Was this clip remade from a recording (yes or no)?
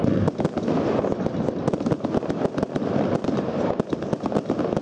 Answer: no